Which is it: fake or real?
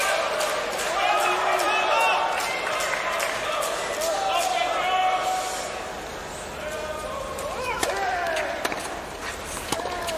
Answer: real